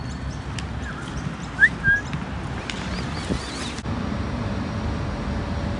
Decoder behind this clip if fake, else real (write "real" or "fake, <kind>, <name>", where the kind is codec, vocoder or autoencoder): real